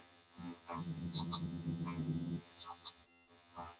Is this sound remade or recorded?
remade